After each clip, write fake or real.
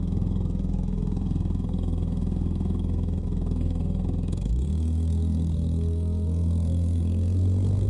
fake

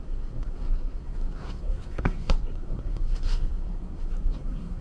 fake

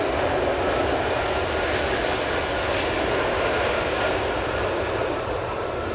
real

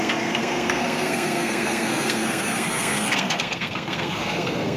fake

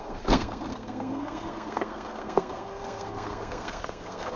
fake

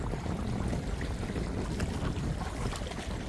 real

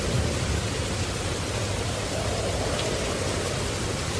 real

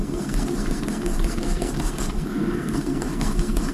fake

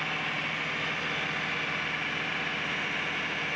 real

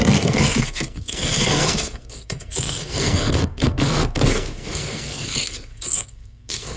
fake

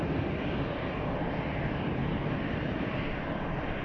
real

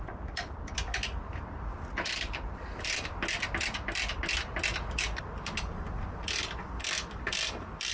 real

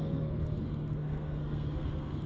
fake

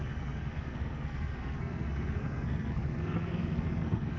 fake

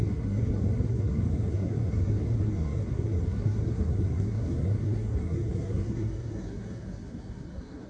fake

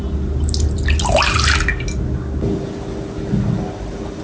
real